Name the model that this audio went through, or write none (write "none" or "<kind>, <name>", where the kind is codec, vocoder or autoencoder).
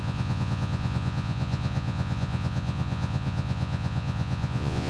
vocoder, Vocos